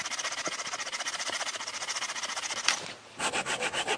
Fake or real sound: real